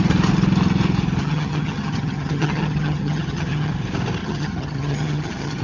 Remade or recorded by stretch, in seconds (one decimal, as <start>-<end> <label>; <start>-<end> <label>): 0.0-1.2 recorded; 1.2-3.7 remade; 3.7-4.2 recorded; 4.2-5.6 remade